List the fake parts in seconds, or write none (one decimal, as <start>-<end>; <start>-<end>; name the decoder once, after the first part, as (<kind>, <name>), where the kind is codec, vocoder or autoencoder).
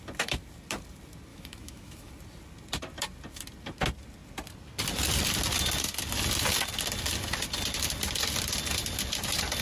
1.3-2.1 (autoencoder, DAC-VAE)